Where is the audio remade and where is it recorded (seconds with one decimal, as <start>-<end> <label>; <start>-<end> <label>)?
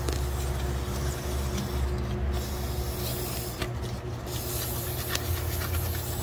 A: 0.0-6.2 recorded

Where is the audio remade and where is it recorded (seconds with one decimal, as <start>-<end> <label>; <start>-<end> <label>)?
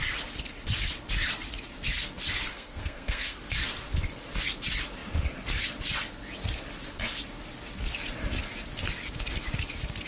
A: 0.0-2.5 recorded; 2.5-3.4 remade; 3.4-10.1 recorded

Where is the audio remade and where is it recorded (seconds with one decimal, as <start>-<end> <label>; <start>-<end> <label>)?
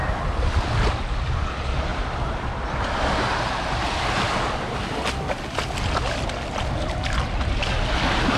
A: 0.0-1.9 recorded; 1.9-2.5 remade; 2.5-8.4 recorded